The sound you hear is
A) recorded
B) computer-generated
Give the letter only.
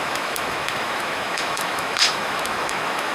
B